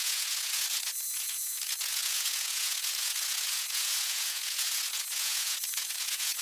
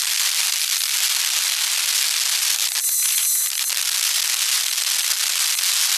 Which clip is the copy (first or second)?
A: first